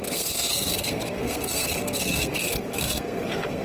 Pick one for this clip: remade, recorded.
remade